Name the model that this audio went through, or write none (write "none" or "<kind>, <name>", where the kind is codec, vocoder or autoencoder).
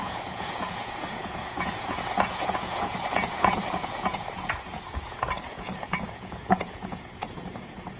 vocoder, Vocos